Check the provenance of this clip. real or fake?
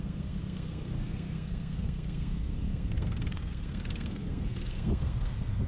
fake